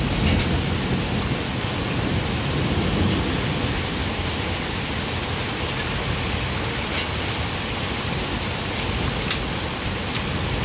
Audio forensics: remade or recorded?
recorded